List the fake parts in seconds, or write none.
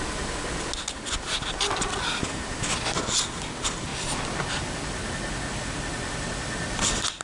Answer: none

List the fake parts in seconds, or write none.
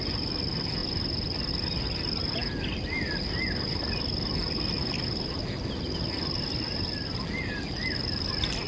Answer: none